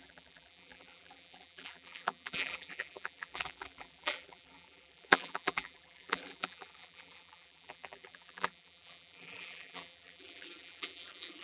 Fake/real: fake